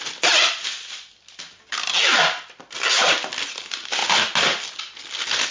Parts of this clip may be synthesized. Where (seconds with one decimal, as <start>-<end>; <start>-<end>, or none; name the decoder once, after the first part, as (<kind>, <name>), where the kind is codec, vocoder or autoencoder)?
none